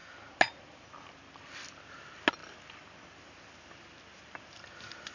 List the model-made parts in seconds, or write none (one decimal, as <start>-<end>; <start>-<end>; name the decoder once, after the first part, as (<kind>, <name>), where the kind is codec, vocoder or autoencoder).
none